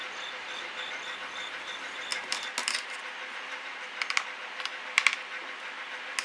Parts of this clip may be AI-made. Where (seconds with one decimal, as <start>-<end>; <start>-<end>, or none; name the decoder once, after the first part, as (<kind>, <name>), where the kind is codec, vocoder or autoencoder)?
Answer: none